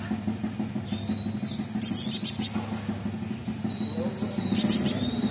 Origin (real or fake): real